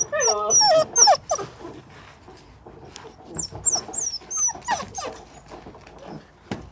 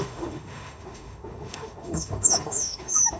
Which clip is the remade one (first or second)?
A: second